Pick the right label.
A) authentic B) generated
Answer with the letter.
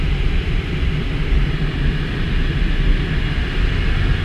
A